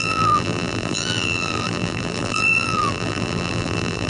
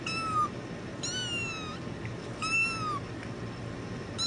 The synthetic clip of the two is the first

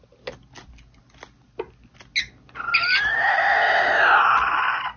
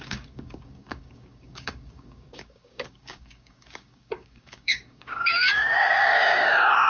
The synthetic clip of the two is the second